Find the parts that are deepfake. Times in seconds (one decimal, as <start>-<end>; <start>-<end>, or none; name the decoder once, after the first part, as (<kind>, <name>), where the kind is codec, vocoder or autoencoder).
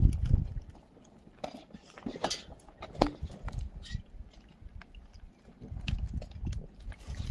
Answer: none